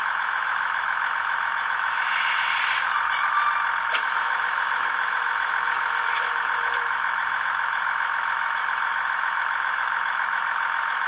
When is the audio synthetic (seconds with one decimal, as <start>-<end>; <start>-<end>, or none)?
0.0-2.5; 3.8-11.1